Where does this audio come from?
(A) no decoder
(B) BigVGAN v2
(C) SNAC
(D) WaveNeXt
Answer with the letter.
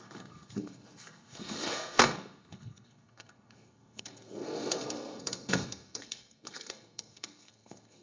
C